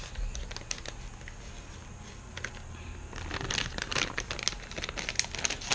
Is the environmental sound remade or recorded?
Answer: recorded